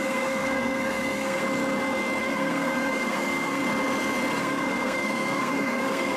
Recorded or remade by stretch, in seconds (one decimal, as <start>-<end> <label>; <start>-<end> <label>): 0.0-1.4 remade; 1.4-2.2 recorded; 2.2-3.6 remade; 3.6-4.4 recorded; 4.4-6.2 remade